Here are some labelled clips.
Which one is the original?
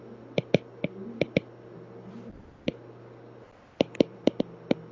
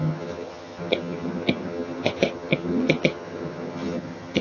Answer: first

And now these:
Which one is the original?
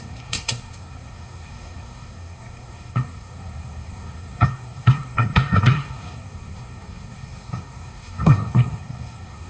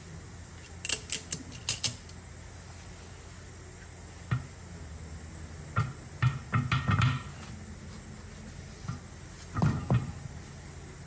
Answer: second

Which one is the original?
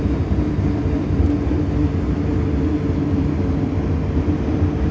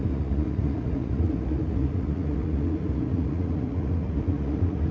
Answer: first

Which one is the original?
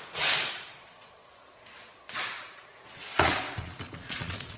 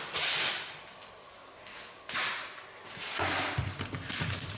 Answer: second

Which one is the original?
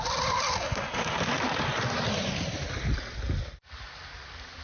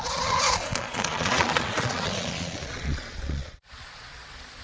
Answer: first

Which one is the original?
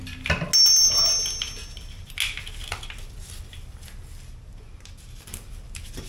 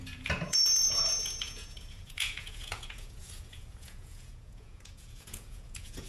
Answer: first